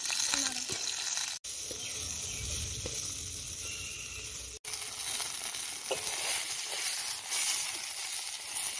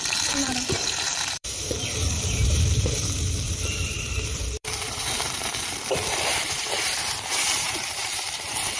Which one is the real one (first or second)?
first